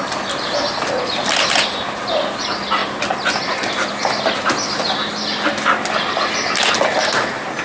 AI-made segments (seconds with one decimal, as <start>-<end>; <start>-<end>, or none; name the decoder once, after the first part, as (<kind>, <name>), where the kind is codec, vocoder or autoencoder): none